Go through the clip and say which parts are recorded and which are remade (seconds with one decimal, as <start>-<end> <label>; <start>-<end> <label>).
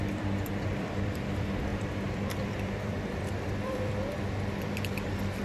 0.0-3.9 remade; 3.9-4.6 recorded; 4.6-5.4 remade